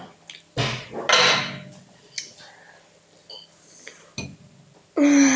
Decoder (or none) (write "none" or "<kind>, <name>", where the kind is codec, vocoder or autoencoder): none